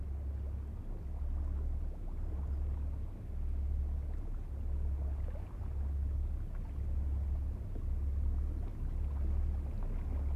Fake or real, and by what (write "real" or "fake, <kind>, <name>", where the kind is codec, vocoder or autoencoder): real